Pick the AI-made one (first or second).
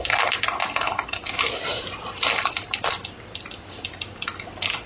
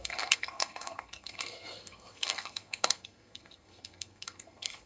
second